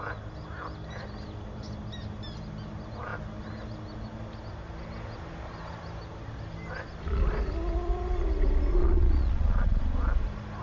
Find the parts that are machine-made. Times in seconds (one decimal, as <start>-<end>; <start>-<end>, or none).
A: 8.8-9.8